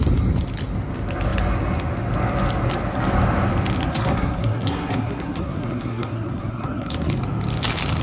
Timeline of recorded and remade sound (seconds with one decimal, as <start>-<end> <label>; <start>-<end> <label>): 0.0-3.9 recorded; 3.9-7.2 remade; 7.2-8.0 recorded